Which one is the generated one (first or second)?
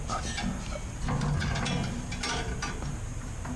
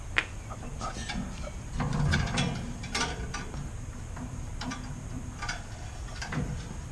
second